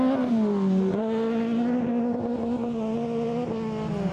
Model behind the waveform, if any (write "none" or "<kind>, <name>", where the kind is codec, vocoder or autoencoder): none